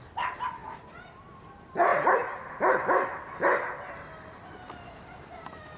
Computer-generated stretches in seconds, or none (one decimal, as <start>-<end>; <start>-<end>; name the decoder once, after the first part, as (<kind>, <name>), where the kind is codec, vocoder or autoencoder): none